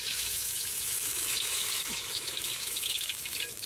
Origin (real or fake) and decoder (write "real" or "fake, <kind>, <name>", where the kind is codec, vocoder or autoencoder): fake, autoencoder, DAC-VAE